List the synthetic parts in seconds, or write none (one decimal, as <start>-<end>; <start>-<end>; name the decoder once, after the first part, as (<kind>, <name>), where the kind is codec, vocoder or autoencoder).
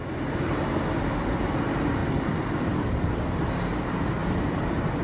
0.0-2.0 (vocoder, BigVGAN v2); 2.6-5.0